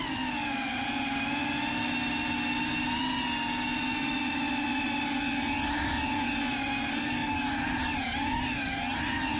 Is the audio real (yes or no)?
yes